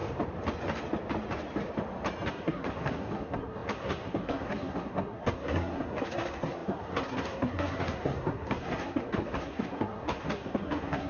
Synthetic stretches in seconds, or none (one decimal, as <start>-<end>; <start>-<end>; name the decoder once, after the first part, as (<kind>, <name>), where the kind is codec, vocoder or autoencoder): 2.3-11.1 (codec, SNAC)